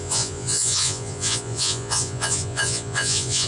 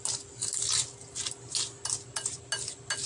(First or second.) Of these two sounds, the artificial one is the first